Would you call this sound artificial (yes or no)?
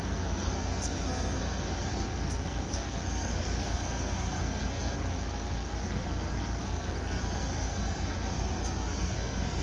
yes